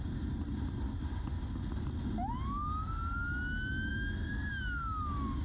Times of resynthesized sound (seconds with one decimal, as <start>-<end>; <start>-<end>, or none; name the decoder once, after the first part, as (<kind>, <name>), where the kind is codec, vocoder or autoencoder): none